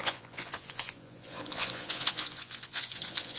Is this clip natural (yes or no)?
no